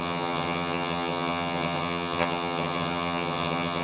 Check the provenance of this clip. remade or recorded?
remade